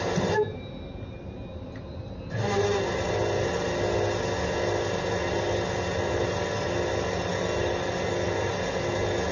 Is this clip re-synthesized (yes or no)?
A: no